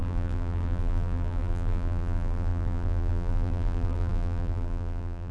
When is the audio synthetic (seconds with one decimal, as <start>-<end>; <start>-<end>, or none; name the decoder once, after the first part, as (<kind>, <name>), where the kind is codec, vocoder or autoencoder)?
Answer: 0.0-5.3 (vocoder, BigVGAN v2)